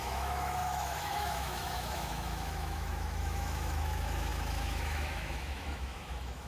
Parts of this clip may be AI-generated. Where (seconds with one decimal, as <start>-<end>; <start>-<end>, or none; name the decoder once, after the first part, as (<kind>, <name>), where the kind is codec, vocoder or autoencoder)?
0.0-6.5 (autoencoder, DAC-VAE)